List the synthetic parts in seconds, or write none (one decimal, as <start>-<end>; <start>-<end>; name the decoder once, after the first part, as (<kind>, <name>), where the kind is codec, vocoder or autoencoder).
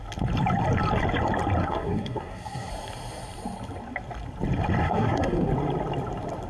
1.6-2.7 (codec, SNAC); 4.8-5.5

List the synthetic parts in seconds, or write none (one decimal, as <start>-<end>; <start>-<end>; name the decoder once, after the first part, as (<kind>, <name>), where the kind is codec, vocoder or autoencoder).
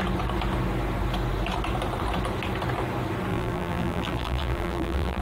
3.3-5.2 (vocoder, BigVGAN v2)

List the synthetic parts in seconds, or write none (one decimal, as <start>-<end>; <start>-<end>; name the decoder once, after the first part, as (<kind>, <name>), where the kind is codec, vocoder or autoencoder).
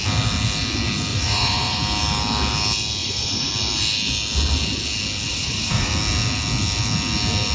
1.1-1.8 (vocoder, Vocos); 3.0-3.5; 5.3-5.9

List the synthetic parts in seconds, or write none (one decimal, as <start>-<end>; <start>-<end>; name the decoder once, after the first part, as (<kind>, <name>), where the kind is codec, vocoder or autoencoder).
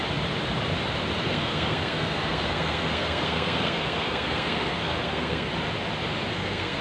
1.2-5.5 (codec, SNAC); 6.3-6.8